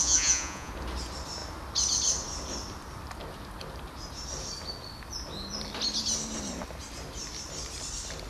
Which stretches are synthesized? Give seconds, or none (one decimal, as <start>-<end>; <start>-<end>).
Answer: 0.0-0.7